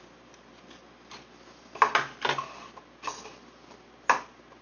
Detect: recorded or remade recorded